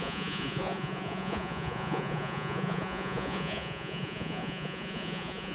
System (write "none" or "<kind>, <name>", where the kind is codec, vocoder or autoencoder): vocoder, Vocos